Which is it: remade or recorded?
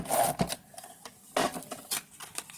recorded